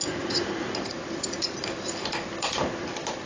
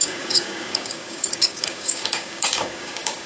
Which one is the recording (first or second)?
first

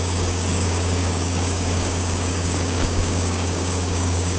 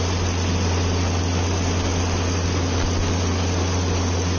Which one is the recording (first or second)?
second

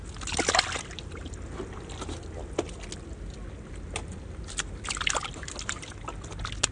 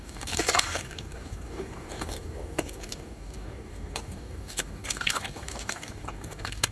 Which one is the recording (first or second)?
first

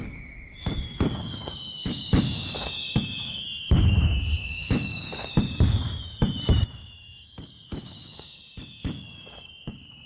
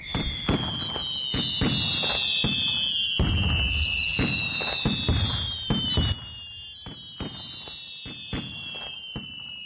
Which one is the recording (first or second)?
second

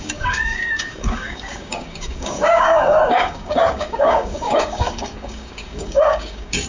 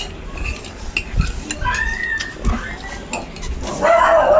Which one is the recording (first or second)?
second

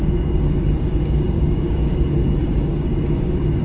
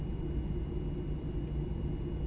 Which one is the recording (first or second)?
second